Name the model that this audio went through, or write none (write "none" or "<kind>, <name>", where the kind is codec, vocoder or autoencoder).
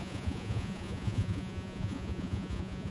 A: vocoder, Vocos